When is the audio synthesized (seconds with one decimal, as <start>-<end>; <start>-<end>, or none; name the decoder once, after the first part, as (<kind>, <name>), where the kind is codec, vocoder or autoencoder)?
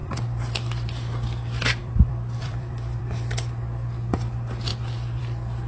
0.0-0.9 (vocoder, BigVGAN v2); 1.8-3.0